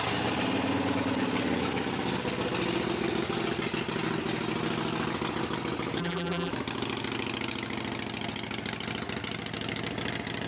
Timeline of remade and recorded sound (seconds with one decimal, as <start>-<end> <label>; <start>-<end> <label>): 0.0-6.0 recorded; 6.0-6.5 remade; 6.5-10.5 recorded